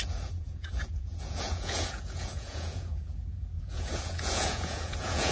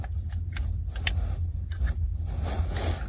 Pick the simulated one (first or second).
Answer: first